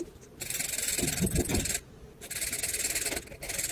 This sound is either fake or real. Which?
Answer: real